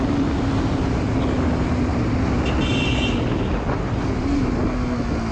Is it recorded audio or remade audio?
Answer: recorded